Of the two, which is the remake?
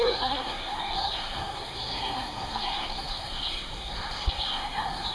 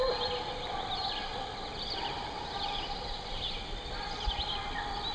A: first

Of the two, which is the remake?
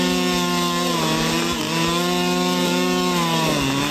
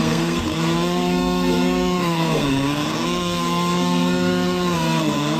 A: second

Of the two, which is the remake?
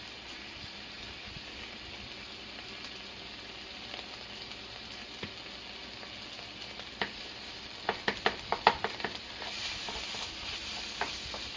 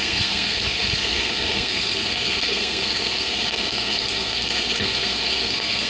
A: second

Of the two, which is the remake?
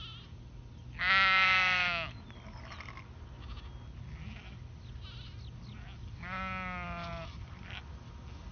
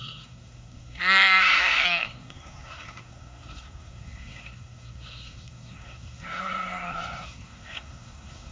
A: second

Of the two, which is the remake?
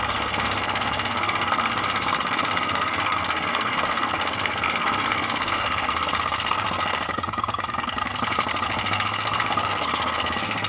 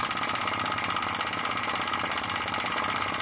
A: first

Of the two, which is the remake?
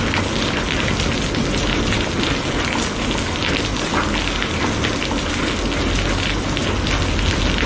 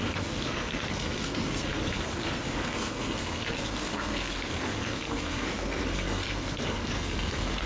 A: second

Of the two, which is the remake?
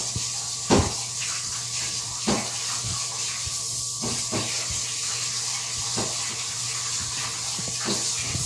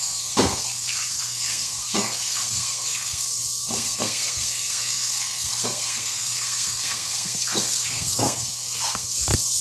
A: second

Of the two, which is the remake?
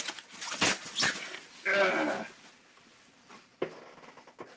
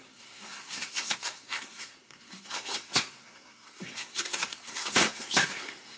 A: second